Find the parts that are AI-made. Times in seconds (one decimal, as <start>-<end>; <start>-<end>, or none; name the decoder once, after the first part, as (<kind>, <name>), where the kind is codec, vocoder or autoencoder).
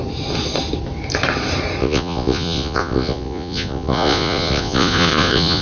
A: 1.8-5.6 (vocoder, Vocos)